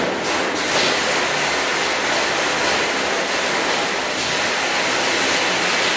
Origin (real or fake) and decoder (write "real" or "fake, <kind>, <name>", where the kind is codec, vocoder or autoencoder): real